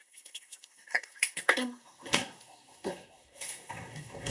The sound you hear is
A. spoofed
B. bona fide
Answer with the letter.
A